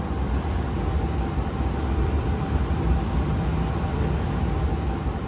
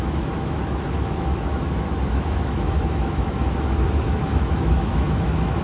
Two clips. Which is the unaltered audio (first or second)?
first